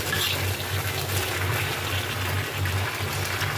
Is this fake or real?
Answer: real